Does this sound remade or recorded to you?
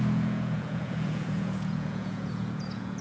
remade